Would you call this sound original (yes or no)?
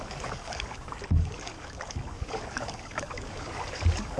no